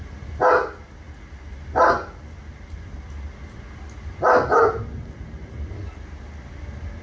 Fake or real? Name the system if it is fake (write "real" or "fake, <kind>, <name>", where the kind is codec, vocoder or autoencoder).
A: real